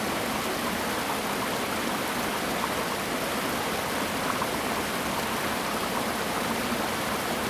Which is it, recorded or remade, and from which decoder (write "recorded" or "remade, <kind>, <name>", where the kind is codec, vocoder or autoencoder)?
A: recorded